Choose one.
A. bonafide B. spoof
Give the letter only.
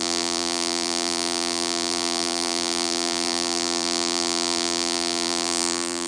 B